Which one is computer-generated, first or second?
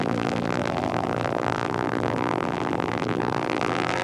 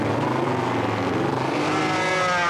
first